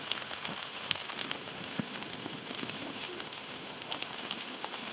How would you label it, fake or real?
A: fake